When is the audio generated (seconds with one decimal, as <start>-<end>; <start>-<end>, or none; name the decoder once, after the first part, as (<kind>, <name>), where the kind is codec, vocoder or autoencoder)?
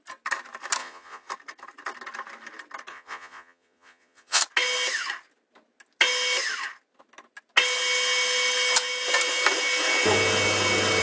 0.8-1.3 (vocoder, Vocos); 2.9-4.4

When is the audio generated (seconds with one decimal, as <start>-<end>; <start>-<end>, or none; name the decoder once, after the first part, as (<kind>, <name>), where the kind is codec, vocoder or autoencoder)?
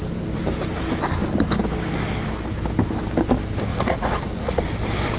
3.7-4.6 (vocoder, Vocos)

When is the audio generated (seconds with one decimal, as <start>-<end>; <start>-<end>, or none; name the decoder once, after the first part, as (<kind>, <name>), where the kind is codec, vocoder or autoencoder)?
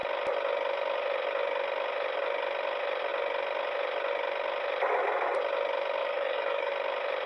6.0-6.7 (codec, DAC)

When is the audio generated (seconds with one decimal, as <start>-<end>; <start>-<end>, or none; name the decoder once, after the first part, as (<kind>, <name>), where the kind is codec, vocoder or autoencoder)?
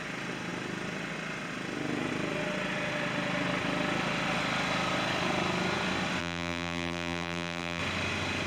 6.2-7.8 (vocoder, BigVGAN v2)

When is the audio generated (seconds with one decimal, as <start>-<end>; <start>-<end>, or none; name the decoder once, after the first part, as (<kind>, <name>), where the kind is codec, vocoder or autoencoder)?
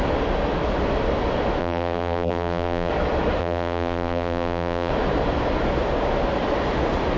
1.6-2.9 (vocoder, BigVGAN v2); 3.4-4.9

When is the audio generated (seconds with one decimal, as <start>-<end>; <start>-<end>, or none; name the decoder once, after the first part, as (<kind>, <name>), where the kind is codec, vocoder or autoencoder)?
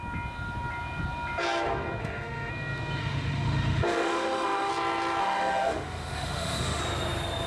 2.0-2.5 (autoencoder, DAC-VAE); 3.0-4.7; 5.2-6.8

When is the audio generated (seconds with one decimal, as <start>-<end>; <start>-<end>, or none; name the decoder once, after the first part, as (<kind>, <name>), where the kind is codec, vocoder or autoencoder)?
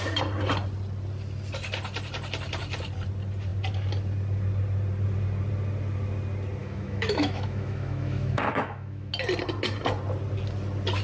6.6-9.1 (autoencoder, DAC-VAE)